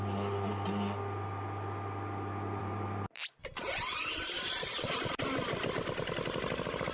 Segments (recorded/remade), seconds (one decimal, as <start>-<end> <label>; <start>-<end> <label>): 0.0-2.6 recorded; 2.6-5.2 remade; 5.2-6.9 recorded